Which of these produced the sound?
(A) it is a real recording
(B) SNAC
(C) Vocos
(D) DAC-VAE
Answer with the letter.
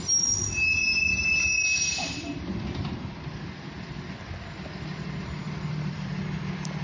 A